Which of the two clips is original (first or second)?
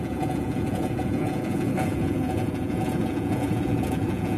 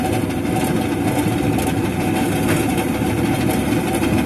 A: second